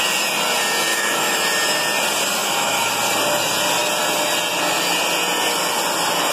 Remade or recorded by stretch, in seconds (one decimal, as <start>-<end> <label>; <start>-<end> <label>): 0.0-0.9 recorded; 0.9-1.4 remade; 1.4-2.4 recorded; 2.4-2.9 remade; 2.9-6.3 recorded